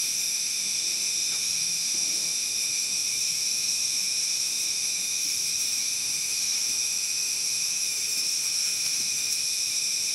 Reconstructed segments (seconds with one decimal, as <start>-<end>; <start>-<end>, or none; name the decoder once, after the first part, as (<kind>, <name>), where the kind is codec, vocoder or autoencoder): 0.0-10.1 (autoencoder, DAC-VAE)